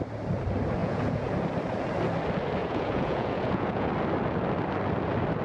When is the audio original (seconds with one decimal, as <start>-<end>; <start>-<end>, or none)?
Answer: 0.0-0.8; 1.3-2.6; 3.9-5.4